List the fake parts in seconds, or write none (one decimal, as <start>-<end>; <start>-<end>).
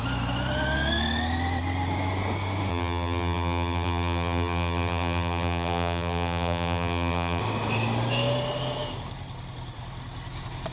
2.7-7.4